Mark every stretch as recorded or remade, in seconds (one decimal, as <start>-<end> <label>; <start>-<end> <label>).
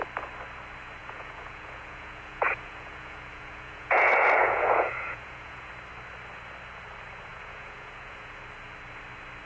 0.0-1.0 recorded; 1.0-5.7 remade; 5.7-7.3 recorded; 7.3-8.4 remade; 8.4-9.5 recorded